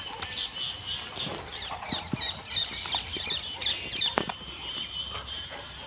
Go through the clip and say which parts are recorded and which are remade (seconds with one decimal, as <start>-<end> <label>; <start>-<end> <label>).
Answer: 0.0-1.3 recorded; 1.3-4.3 remade; 4.3-5.9 recorded